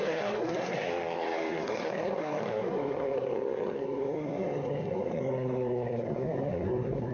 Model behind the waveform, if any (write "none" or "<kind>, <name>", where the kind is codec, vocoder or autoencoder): codec, SNAC